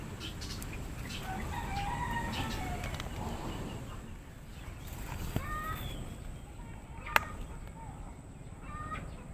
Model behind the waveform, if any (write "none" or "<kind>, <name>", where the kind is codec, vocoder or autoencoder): none